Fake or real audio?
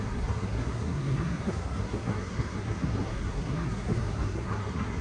fake